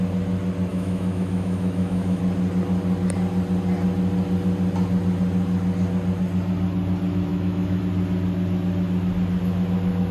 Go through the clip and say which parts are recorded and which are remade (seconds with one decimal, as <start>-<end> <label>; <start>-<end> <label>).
0.0-0.7 recorded; 0.7-2.2 remade; 2.2-7.3 recorded; 7.3-7.8 remade; 7.8-10.1 recorded